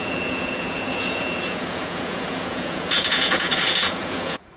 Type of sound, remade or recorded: remade